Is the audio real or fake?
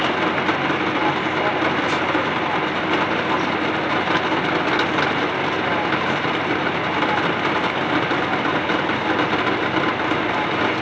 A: real